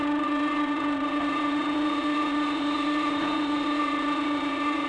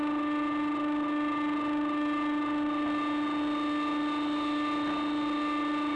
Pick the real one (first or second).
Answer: second